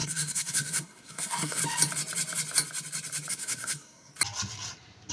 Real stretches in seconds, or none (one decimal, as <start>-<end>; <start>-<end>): 1.6-3.3; 4.1-5.1